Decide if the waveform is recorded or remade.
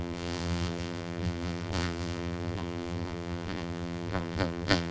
remade